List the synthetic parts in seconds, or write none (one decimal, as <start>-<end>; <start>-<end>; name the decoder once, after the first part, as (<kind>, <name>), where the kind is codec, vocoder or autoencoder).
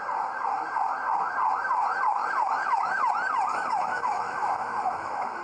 2.2-3.1 (autoencoder, DAC-VAE); 3.5-5.4